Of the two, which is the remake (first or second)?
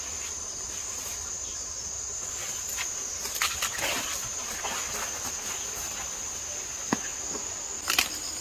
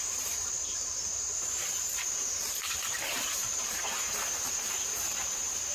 second